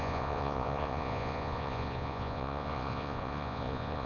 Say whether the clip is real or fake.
fake